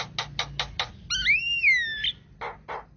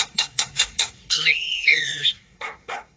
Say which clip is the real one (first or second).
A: first